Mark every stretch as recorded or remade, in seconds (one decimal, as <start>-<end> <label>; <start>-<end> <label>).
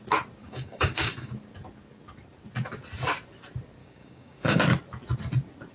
0.0-0.4 recorded; 0.4-1.3 remade; 1.3-3.8 recorded; 3.8-4.6 remade; 4.6-5.7 recorded